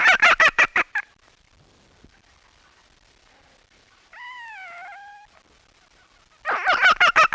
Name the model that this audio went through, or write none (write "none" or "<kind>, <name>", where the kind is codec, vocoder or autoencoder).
vocoder, BigVGAN v2